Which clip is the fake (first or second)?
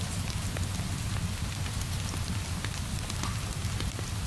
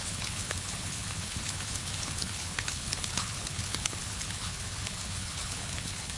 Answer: second